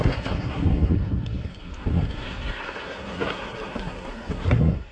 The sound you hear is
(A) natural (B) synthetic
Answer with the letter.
B